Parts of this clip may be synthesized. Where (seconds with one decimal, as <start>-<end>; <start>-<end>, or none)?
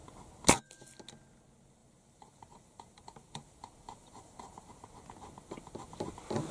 1.8-4.7